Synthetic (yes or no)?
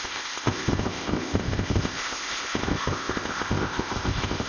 yes